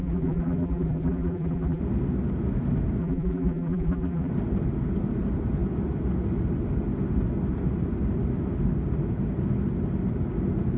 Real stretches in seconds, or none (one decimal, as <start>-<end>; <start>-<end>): 1.8-3.0; 4.3-10.8